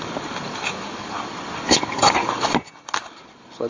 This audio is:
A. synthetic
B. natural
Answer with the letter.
B